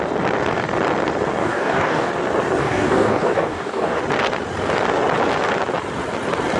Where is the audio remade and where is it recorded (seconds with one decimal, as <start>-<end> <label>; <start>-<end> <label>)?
0.0-1.4 recorded; 1.4-2.1 remade; 2.1-2.6 recorded; 2.6-4.0 remade; 4.0-6.6 recorded